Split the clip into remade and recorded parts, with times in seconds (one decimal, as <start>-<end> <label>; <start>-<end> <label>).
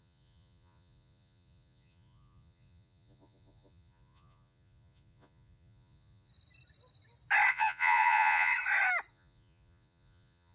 0.0-6.3 remade; 6.3-7.5 recorded; 7.5-8.5 remade; 8.5-9.1 recorded; 9.1-10.5 remade